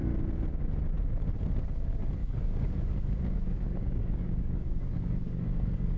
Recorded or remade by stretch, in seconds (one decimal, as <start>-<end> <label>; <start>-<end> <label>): 0.0-2.2 recorded; 2.2-6.0 remade